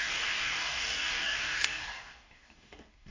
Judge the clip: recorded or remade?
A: remade